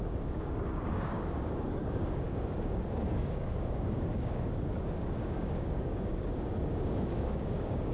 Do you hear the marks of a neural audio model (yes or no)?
yes